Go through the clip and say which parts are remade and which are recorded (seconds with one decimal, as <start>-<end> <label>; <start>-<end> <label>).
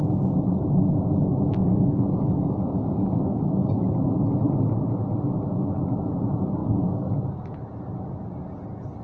0.0-1.6 recorded; 1.6-3.7 remade; 3.7-6.6 recorded; 6.6-7.1 remade; 7.1-9.0 recorded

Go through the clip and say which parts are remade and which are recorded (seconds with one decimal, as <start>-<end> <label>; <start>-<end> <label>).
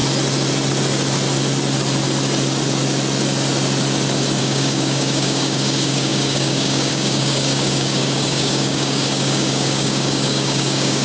0.0-4.4 recorded; 4.4-11.0 remade